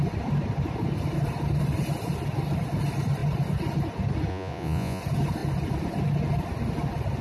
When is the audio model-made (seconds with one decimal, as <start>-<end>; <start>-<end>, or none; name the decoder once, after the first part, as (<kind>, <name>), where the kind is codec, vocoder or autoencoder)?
4.3-5.0 (vocoder, Vocos)